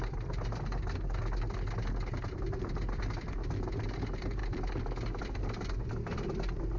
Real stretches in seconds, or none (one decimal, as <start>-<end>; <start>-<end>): 0.0-6.8